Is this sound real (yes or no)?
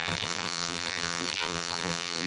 no